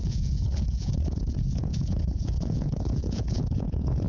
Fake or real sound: fake